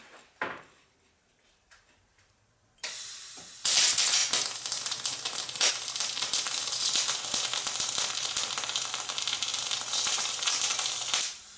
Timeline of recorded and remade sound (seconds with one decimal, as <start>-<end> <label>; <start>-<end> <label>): 0.0-11.6 remade

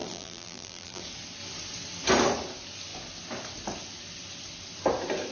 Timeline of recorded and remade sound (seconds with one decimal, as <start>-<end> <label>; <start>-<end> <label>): 0.0-1.0 remade; 1.0-5.3 recorded

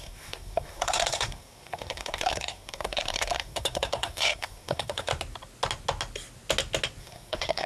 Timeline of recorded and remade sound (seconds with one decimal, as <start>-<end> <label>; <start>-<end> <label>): 0.0-5.1 remade; 5.1-7.0 recorded; 7.0-7.7 remade

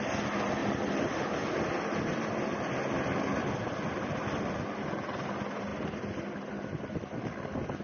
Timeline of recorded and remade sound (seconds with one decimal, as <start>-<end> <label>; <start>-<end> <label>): 0.0-7.8 recorded

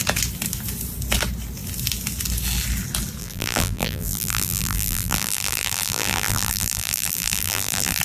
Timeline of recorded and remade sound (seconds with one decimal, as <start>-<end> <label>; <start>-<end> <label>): 0.0-3.2 recorded; 3.2-8.0 remade

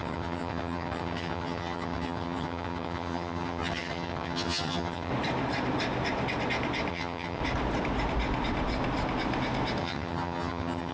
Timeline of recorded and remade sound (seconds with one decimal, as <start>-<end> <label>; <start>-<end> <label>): 0.0-5.1 remade; 5.1-6.9 recorded; 6.9-7.4 remade; 7.4-9.8 recorded; 9.8-10.9 remade